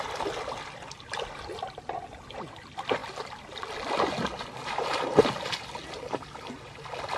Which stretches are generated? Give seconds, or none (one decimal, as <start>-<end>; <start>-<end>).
none